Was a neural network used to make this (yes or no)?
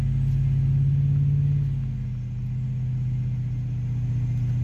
no